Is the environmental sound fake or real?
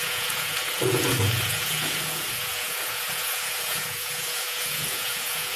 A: fake